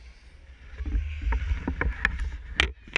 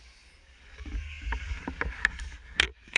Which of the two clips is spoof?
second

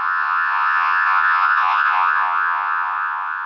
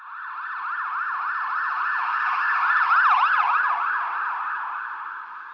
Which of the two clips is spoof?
first